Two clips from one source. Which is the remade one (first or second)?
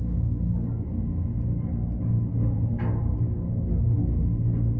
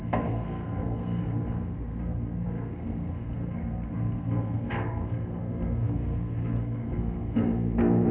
second